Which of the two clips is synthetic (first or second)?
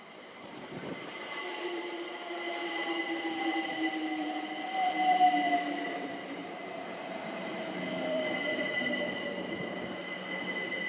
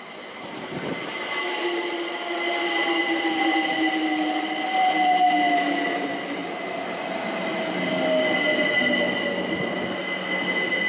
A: first